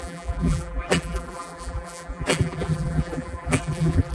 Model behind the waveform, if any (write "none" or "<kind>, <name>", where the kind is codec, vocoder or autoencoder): vocoder, BigVGAN v2